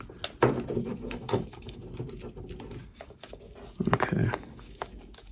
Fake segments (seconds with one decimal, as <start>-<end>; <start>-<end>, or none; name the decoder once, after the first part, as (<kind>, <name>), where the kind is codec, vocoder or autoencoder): 0.9-1.8 (codec, DAC); 2.8-3.5; 4.2-5.3